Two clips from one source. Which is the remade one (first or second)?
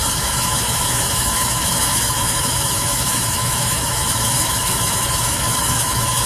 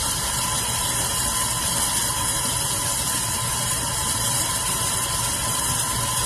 first